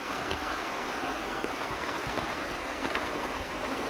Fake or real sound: fake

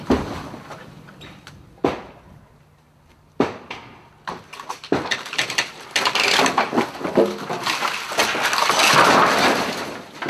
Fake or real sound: real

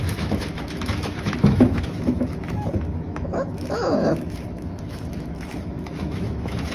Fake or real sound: fake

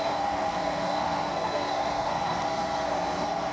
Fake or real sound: fake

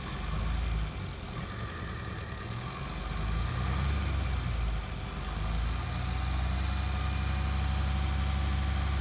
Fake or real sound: real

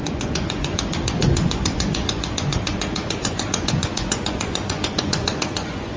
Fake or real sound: fake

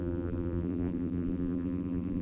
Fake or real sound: fake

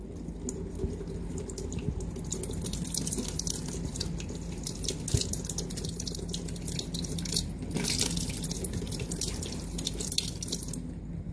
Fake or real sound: real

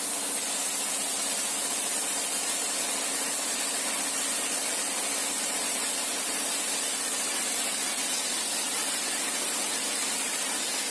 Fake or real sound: real